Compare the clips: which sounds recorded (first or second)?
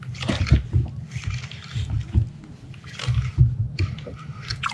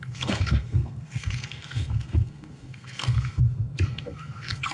first